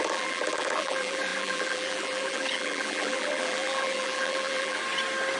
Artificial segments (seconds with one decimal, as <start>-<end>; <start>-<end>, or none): 0.0-4.8

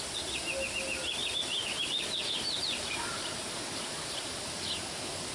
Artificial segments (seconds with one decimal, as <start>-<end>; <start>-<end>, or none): 1.2-4.4

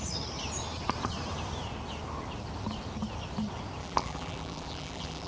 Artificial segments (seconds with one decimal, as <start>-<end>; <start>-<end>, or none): 3.8-5.3

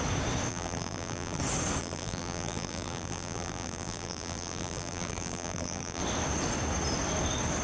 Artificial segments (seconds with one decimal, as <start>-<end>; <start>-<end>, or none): 0.5-1.4; 1.8-6.0

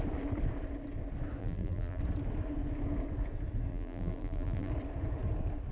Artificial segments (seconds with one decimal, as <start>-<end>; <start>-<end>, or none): 1.4-2.0; 3.7-4.7

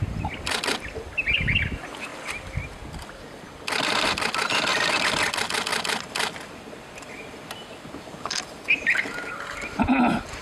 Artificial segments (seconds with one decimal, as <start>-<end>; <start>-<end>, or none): 4.7-5.3